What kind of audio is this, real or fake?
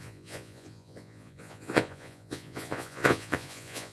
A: fake